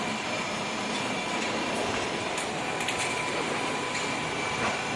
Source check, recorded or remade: recorded